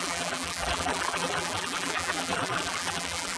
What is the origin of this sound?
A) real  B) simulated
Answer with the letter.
B